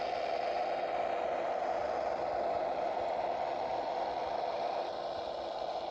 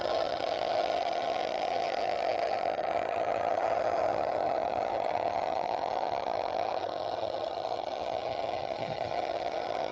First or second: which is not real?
second